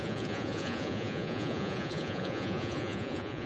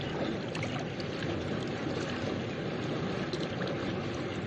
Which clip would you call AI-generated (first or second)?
first